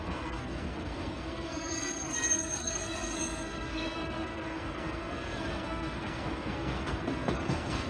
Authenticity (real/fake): fake